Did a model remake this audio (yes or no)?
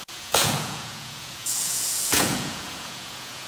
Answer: yes